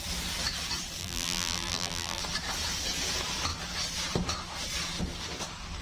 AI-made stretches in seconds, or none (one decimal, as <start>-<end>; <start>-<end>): 1.0-2.2